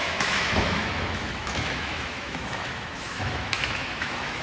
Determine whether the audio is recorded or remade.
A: remade